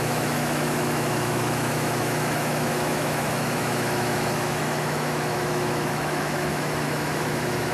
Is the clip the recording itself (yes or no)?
no